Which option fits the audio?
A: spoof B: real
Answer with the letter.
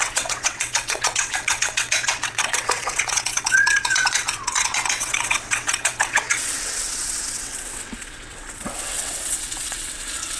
A